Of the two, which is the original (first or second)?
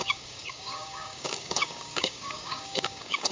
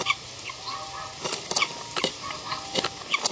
second